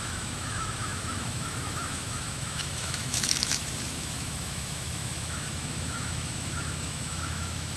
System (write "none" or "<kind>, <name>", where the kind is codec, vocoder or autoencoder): autoencoder, DAC-VAE